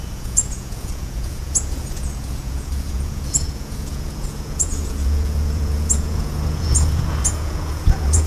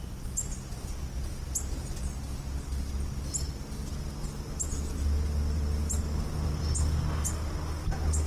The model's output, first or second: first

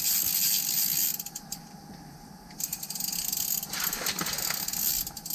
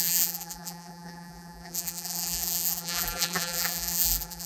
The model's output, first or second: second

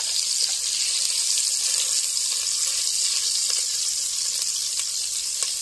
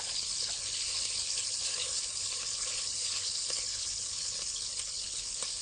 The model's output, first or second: second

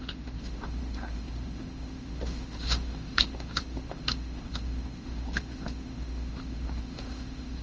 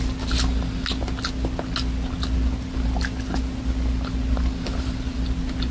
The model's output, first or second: first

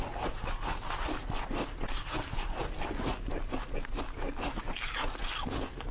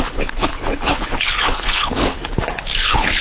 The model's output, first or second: second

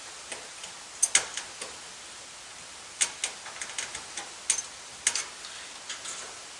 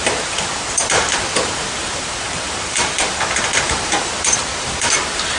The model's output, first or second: second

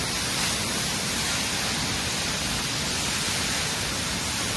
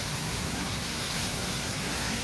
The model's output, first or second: second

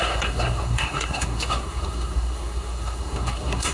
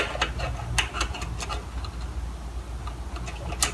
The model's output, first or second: first